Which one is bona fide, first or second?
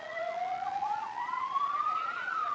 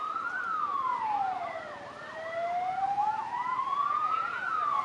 second